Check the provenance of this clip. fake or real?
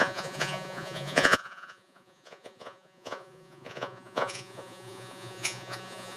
fake